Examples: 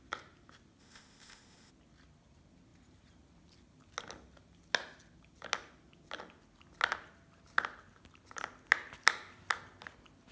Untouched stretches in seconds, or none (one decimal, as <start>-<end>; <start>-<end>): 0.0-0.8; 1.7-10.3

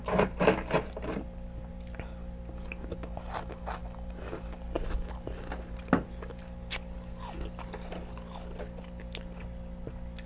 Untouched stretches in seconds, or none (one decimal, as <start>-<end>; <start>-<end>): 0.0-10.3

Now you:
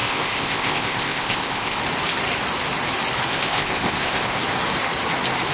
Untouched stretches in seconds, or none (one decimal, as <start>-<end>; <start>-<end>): 1.8-3.3; 4.4-5.5